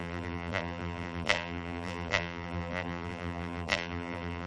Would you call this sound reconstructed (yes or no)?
yes